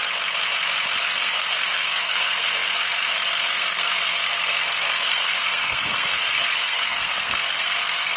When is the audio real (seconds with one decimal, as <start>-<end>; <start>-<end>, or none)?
0.0-1.0